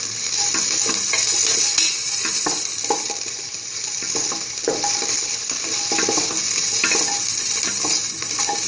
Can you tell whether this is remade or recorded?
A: recorded